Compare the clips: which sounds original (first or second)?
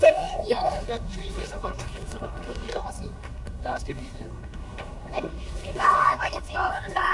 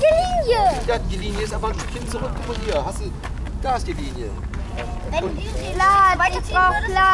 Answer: second